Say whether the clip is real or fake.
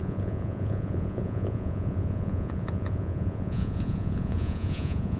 fake